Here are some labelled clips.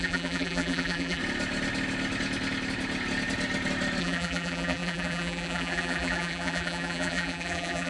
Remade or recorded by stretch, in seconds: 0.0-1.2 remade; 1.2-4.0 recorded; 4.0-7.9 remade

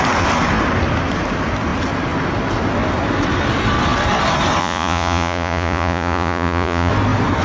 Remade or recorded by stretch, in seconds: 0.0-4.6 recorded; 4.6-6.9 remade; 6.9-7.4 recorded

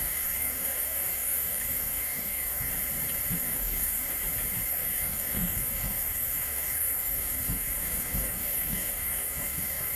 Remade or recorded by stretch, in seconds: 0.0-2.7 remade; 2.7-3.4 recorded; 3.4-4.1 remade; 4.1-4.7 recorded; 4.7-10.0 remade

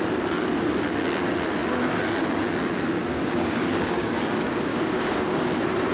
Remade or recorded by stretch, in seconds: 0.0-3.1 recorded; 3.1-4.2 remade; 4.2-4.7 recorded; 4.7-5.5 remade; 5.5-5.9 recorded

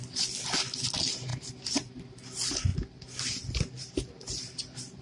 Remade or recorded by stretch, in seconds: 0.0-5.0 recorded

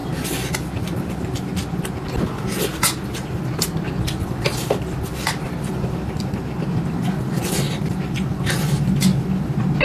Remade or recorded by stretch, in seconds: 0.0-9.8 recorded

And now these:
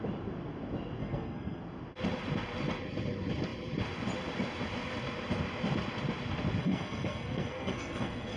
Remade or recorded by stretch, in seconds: 0.0-1.0 recorded; 1.0-1.6 remade; 1.6-6.6 recorded; 6.6-8.4 remade

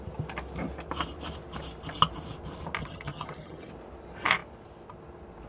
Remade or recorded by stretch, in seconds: 0.0-2.8 recorded; 2.8-3.7 remade; 3.7-5.5 recorded